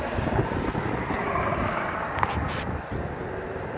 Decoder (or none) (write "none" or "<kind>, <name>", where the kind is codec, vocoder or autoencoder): none